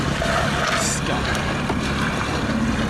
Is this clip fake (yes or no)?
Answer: no